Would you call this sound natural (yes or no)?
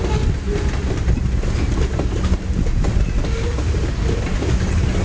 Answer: yes